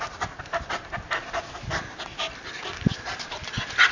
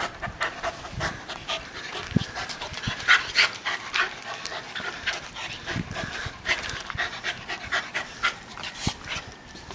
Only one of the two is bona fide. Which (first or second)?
first